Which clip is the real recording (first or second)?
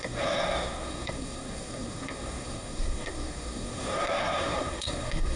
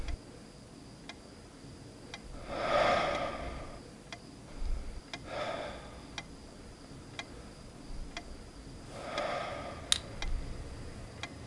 second